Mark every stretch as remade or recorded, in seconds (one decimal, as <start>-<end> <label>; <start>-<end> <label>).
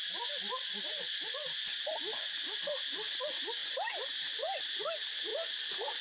0.0-6.0 remade